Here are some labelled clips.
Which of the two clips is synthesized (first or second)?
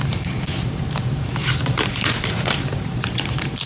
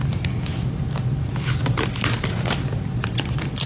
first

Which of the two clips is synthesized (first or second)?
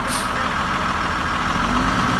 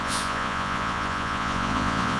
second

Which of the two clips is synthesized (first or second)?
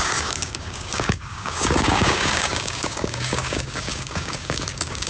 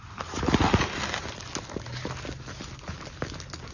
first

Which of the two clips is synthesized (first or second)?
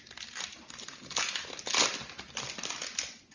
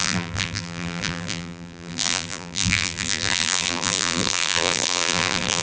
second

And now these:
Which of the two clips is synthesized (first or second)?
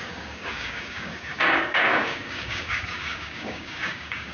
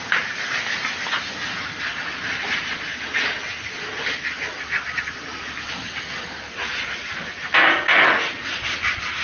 first